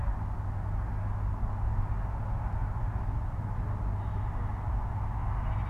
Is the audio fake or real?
real